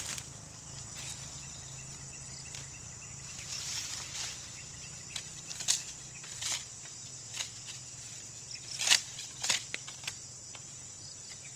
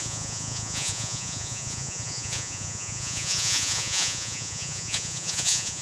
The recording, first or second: first